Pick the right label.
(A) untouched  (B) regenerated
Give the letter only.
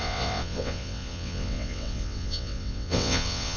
B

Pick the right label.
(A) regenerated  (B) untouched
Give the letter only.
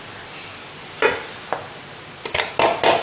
B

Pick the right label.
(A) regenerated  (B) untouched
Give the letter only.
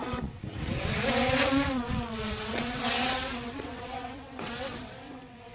A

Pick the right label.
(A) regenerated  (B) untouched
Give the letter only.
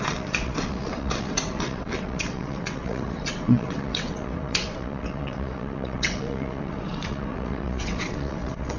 A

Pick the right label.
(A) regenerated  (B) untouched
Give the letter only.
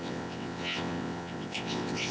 A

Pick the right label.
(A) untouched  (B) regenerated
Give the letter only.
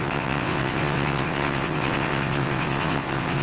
B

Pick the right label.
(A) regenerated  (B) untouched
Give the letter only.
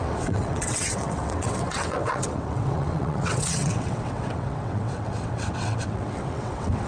A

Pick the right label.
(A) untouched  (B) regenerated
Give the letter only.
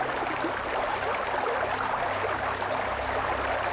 A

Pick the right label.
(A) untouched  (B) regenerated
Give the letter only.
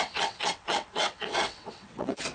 B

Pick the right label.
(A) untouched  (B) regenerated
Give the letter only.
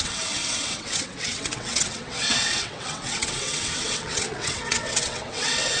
B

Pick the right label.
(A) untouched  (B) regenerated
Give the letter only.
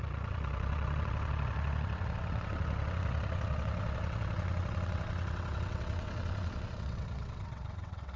B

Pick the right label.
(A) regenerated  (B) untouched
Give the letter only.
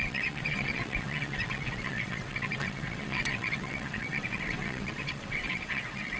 A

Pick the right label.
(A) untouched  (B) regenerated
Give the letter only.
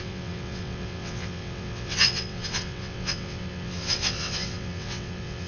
B